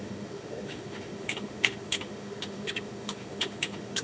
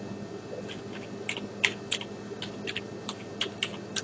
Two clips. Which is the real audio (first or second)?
second